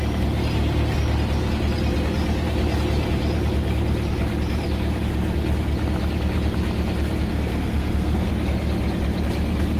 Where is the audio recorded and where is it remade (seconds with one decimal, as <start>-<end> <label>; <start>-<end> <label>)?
0.0-7.3 recorded; 7.3-8.3 remade; 8.3-9.8 recorded